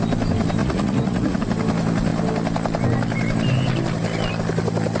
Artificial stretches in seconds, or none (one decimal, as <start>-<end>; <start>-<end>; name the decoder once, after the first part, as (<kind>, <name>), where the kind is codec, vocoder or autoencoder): 0.6-1.4 (vocoder, Vocos)